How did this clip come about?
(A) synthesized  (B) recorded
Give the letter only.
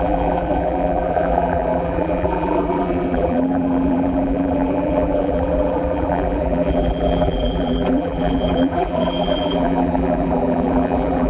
A